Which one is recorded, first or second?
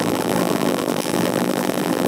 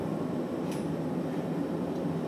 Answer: second